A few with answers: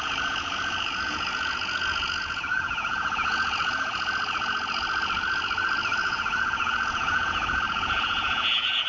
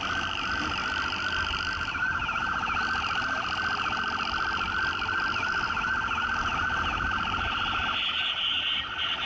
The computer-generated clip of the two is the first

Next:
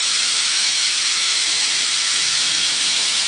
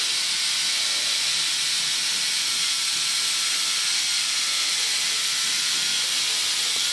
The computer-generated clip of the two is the first